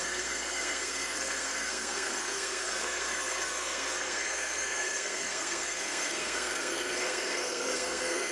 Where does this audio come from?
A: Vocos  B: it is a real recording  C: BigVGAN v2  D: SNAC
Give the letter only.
D